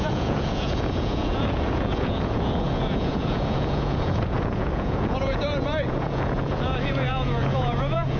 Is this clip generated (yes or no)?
yes